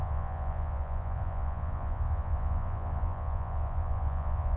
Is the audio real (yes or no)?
no